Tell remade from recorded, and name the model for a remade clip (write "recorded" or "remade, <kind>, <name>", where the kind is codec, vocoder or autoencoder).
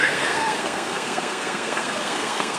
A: remade, codec, SNAC